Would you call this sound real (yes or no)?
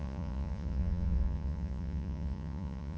no